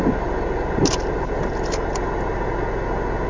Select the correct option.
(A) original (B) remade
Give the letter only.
A